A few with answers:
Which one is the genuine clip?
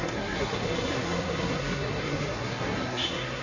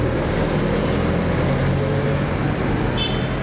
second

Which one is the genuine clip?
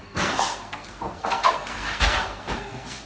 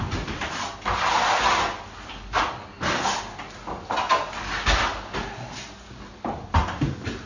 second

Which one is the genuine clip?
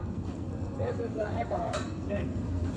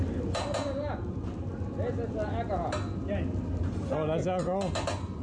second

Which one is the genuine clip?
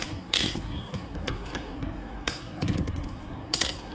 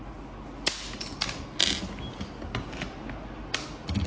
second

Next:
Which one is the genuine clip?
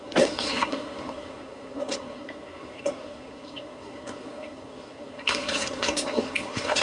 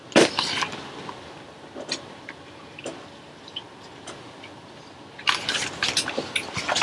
second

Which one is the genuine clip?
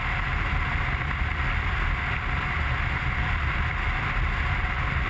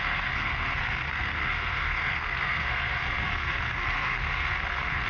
first